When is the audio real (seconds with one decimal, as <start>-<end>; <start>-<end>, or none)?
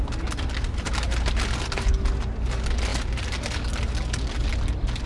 0.0-5.1